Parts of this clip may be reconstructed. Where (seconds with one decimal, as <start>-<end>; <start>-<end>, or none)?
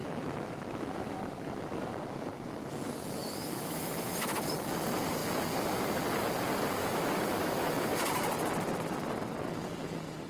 0.0-1.2; 3.2-4.5; 6.8-8.0